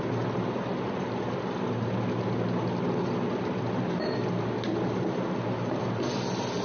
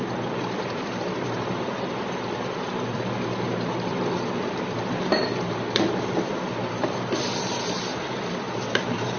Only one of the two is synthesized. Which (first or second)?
second